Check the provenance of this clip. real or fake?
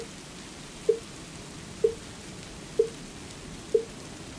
real